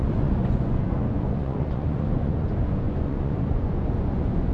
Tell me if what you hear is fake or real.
fake